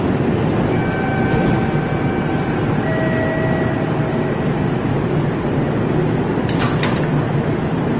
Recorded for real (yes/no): yes